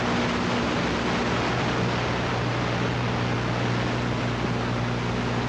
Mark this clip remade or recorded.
recorded